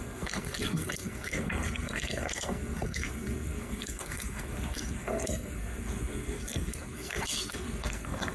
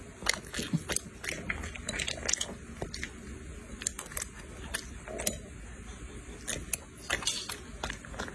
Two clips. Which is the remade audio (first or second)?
first